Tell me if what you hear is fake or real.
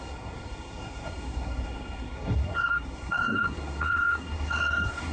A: fake